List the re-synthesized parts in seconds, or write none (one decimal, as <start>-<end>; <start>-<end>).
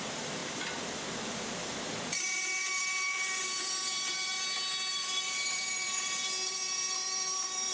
0.0-4.3; 4.9-7.7